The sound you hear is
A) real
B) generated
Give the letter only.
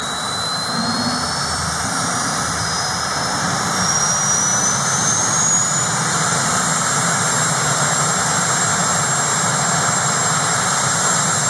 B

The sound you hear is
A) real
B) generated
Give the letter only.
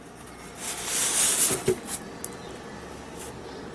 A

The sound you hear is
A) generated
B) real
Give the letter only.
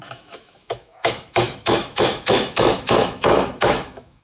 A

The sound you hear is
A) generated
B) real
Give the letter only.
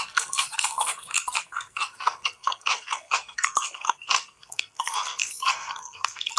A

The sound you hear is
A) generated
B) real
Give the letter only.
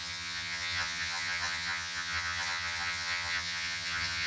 A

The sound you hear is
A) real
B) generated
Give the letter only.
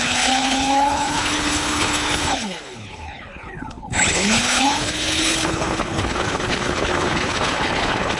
B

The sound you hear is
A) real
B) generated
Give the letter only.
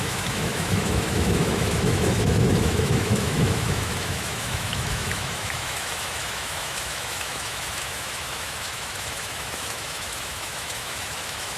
B